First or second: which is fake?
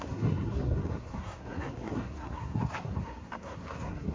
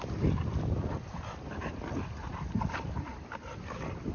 first